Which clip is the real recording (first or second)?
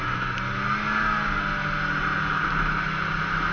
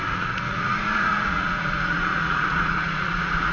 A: first